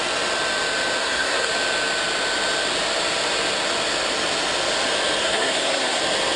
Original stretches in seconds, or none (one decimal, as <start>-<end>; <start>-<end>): 0.0-1.0; 1.5-5.2; 6.0-6.4